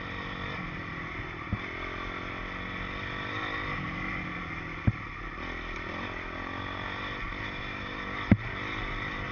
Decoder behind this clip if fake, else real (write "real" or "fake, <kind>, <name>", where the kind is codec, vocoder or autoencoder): real